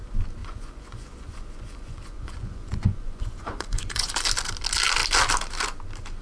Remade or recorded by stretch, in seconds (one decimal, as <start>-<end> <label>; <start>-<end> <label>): 0.0-0.4 recorded; 0.4-4.1 remade; 4.1-6.2 recorded